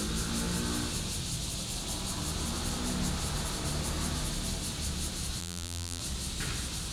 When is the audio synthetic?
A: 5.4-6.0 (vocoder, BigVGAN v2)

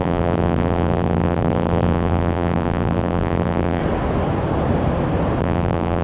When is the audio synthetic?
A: 0.0-3.8 (vocoder, BigVGAN v2); 5.4-6.0

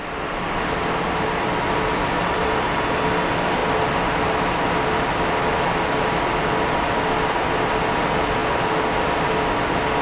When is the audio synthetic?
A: none

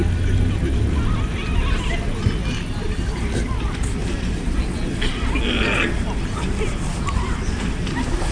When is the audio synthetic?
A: 4.0-4.6 (vocoder, BigVGAN v2)

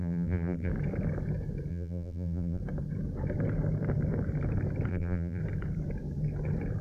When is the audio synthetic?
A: 0.0-0.7 (vocoder, BigVGAN v2); 1.7-2.6; 4.9-5.4

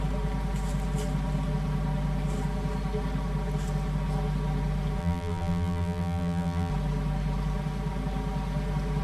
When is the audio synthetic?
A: 5.0-6.7 (vocoder, BigVGAN v2)

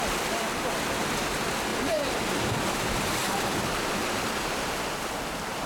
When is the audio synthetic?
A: 1.7-5.1 (vocoder, BigVGAN v2)